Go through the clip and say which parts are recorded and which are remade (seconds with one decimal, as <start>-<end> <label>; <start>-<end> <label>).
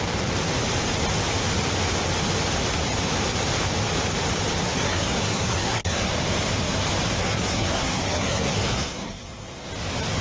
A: 0.0-4.6 recorded; 4.6-6.1 remade; 6.1-7.2 recorded; 7.2-9.7 remade; 9.7-10.2 recorded